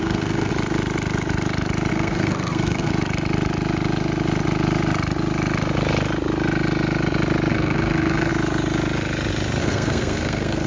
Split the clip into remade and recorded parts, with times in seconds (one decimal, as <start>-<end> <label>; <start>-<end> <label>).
0.0-0.5 remade; 0.5-1.9 recorded; 1.9-2.9 remade; 2.9-7.5 recorded; 7.5-8.3 remade; 8.3-9.6 recorded; 9.6-10.7 remade